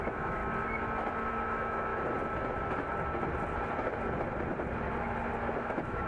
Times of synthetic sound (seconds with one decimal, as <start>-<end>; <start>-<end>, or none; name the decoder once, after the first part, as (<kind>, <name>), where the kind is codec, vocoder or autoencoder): 0.0-0.4 (autoencoder, DAC-VAE); 1.3-1.9; 5.6-6.1